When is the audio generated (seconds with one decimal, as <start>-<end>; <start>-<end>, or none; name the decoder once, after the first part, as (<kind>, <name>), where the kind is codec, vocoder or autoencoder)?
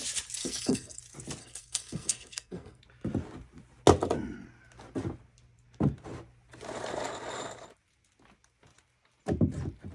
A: 0.4-1.0 (codec, SNAC); 1.4-2.8